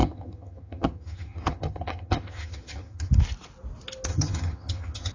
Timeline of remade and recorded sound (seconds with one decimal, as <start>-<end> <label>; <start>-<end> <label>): 0.0-3.1 remade; 3.1-4.1 recorded; 4.1-5.1 remade